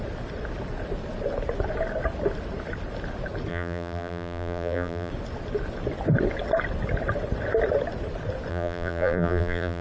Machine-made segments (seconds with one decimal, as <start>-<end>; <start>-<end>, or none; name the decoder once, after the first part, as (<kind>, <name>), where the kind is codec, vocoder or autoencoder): 3.5-5.1 (vocoder, BigVGAN v2); 8.5-9.8